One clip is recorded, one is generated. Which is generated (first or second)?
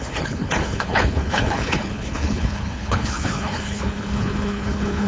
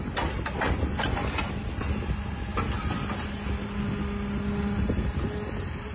first